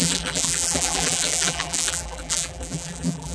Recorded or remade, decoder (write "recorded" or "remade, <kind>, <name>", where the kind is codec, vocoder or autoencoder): remade, vocoder, BigVGAN v2